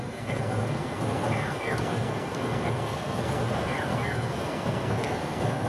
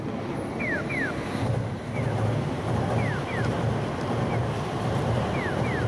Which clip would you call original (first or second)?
second